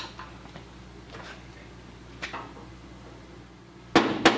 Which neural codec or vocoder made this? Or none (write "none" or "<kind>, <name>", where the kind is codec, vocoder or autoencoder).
none